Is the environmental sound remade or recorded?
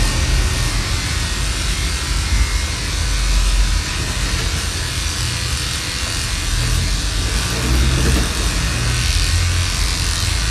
recorded